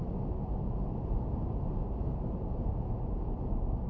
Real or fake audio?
real